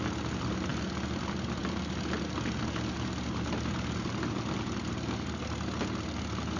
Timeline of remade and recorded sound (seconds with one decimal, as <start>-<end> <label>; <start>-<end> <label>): 0.0-6.6 recorded